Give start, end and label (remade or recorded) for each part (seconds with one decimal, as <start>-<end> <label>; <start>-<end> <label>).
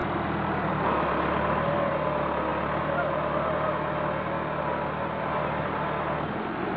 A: 0.0-6.8 recorded